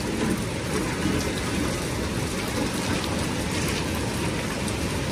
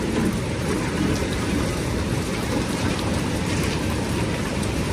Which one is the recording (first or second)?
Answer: first